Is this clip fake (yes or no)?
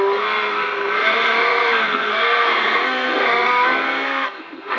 yes